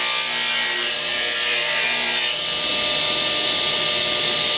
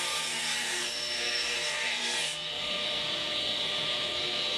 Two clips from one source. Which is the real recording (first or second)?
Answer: first